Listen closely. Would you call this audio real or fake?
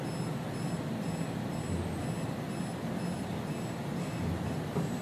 real